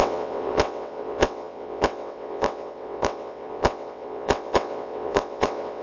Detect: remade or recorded remade